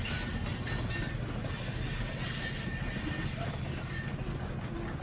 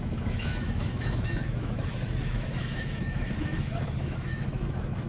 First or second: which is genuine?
first